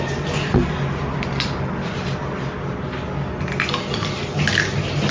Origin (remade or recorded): recorded